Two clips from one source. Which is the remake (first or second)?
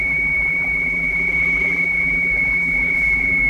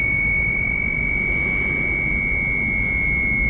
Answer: first